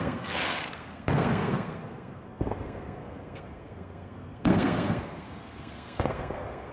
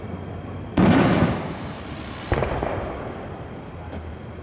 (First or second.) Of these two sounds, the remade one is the first